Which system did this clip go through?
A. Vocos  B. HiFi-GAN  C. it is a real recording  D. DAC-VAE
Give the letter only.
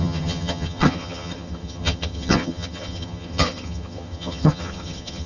B